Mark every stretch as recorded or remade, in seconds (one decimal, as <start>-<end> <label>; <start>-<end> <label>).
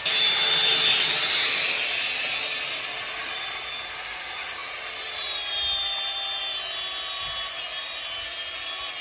0.0-9.0 recorded